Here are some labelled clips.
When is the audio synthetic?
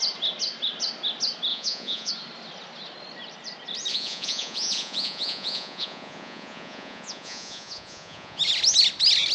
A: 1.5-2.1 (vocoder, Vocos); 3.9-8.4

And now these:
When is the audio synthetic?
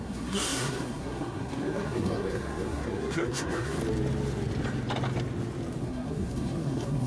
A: 0.0-3.8 (codec, SNAC); 5.8-7.1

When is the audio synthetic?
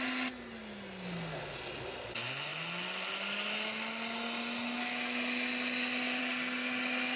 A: none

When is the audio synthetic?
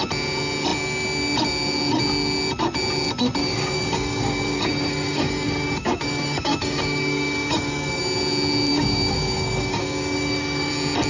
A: 3.4-8.0 (codec, DAC); 8.7-10.7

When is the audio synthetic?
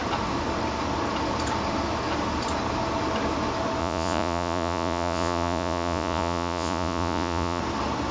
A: 3.8-7.6 (vocoder, Vocos)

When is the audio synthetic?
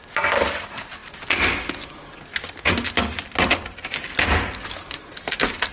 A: none